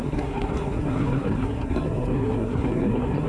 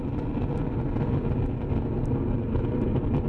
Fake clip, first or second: first